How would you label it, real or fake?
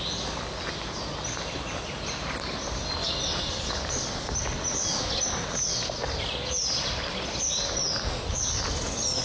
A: real